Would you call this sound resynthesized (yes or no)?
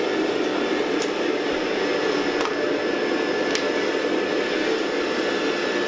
no